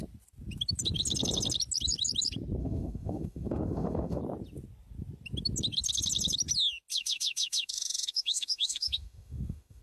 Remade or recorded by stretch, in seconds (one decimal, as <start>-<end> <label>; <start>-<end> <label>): 0.0-2.6 recorded; 2.6-4.2 remade; 4.2-6.9 recorded; 6.9-9.8 remade